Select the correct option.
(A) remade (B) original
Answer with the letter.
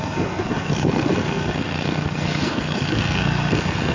A